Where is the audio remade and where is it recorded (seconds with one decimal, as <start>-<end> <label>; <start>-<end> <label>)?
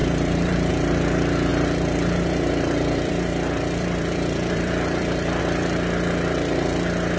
0.0-0.7 remade; 0.7-1.5 recorded; 1.5-5.4 remade; 5.4-7.2 recorded